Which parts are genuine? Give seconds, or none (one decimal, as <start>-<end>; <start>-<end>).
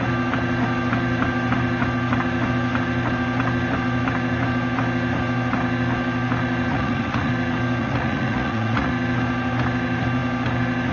0.0-6.7; 7.3-7.8; 8.9-10.9